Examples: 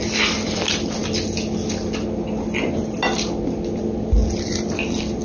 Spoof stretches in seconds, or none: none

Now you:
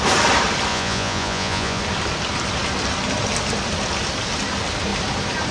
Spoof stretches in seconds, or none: 0.7-1.8 (vocoder, Vocos)

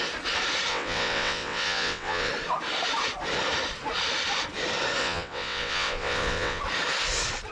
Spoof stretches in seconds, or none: 0.7-2.3 (vocoder, WaveNeXt); 5.0-6.6

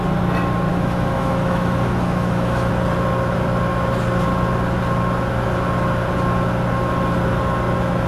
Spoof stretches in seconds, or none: 0.7-2.7 (autoencoder, DAC-VAE)

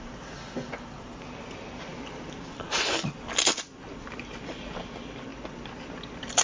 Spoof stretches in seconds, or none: none